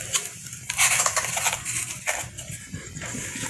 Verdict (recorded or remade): remade